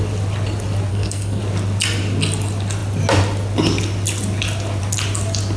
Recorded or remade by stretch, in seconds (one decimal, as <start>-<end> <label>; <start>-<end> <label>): 0.0-0.9 recorded; 0.9-1.4 remade; 1.4-5.6 recorded

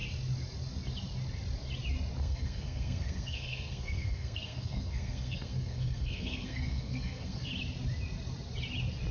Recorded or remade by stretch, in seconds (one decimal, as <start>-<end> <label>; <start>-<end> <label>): 0.0-2.2 recorded; 2.2-7.5 remade; 7.5-9.1 recorded

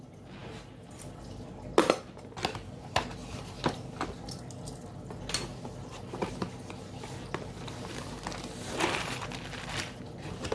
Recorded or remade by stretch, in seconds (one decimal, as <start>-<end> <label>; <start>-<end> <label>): 0.0-10.5 recorded

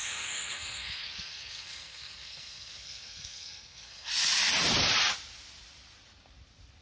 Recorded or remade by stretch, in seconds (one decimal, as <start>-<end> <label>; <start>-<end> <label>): 0.0-4.1 remade; 4.1-6.8 recorded